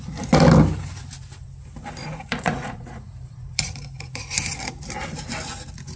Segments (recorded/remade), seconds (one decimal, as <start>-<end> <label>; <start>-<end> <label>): 0.0-2.0 recorded; 2.0-4.3 remade; 4.3-6.0 recorded